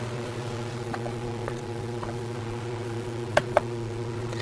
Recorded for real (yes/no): no